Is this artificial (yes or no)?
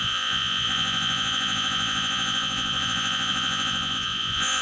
yes